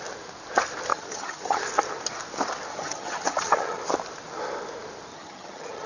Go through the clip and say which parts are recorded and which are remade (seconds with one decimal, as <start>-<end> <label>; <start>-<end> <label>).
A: 0.0-0.9 recorded; 0.9-1.6 remade; 1.6-2.7 recorded; 2.7-3.8 remade; 3.8-5.1 recorded; 5.1-5.9 remade